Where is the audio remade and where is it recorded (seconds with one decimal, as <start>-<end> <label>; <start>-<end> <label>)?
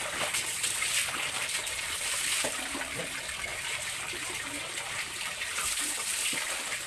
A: 0.0-1.6 recorded; 1.6-3.0 remade; 3.0-3.5 recorded; 3.5-5.9 remade; 5.9-6.9 recorded